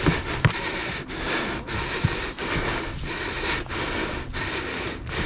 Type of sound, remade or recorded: recorded